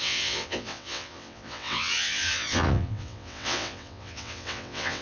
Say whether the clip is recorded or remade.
remade